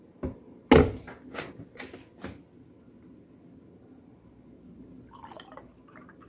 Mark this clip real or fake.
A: real